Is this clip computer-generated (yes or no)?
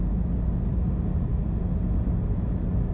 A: no